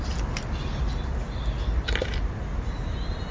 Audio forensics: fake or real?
real